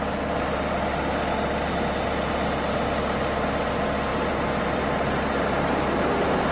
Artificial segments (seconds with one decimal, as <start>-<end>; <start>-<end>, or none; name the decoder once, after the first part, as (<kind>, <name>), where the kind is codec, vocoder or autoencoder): none